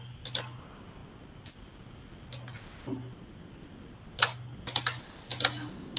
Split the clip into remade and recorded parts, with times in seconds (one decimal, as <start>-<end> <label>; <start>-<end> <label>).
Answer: 0.0-6.0 recorded